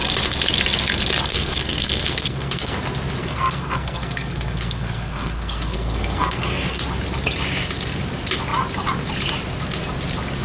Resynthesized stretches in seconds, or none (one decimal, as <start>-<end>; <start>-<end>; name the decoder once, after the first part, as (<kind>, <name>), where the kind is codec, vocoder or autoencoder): 1.3-2.8 (codec, SNAC); 3.2-6.8